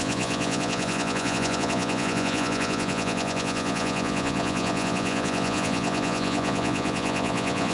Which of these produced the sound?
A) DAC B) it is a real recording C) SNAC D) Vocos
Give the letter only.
D